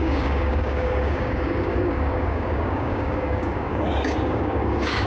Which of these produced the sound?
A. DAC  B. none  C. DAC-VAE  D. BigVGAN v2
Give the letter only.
A